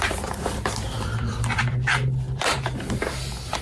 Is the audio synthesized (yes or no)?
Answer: yes